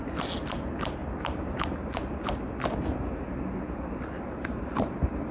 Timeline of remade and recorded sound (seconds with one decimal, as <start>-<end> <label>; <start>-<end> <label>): 0.0-5.3 recorded